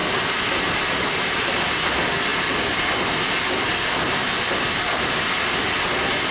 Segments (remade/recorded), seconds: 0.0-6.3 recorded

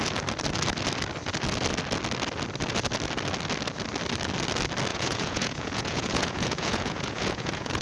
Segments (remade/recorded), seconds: 0.0-4.9 recorded; 4.9-7.8 remade

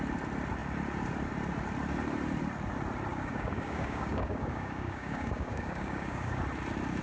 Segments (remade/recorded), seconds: 0.0-3.1 recorded; 3.1-6.4 remade; 6.4-7.0 recorded

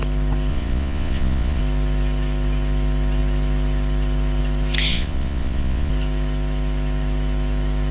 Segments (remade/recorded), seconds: 0.0-0.5 recorded; 0.5-1.6 remade; 1.6-4.9 recorded; 4.9-5.9 remade; 5.9-7.9 recorded